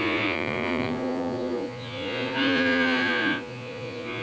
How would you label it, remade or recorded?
remade